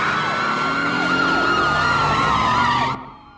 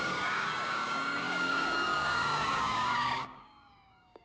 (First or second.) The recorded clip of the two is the first